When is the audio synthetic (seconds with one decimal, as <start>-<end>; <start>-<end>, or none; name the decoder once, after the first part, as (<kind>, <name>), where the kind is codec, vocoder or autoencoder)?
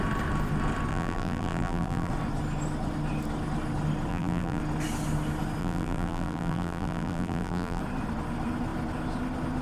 0.9-2.1 (vocoder, BigVGAN v2); 4.1-4.6; 5.6-7.8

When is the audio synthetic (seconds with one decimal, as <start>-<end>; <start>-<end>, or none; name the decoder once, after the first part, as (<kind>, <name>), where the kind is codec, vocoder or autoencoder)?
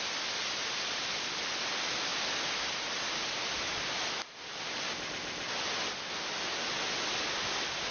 none